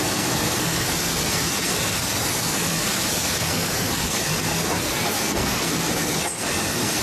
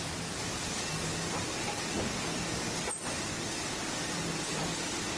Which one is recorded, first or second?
second